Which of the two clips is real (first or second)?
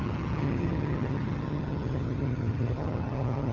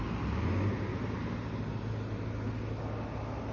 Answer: second